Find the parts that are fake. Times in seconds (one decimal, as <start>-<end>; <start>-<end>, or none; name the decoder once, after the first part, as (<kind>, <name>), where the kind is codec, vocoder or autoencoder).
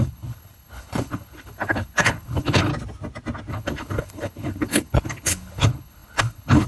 0.0-2.7 (codec, HILCodec); 3.5-6.7